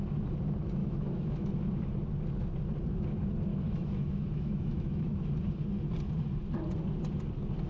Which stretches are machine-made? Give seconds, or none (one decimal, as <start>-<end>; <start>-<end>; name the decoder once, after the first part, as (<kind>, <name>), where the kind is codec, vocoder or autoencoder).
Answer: 0.8-1.5 (autoencoder, DAC-VAE); 3.5-5.2